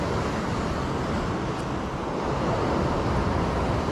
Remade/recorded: recorded